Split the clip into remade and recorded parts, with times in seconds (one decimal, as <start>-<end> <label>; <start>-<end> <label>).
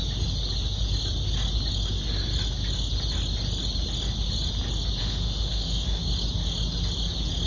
0.0-5.0 recorded; 5.0-6.0 remade; 6.0-7.5 recorded